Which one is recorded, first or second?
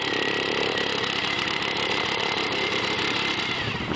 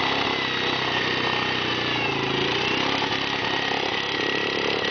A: second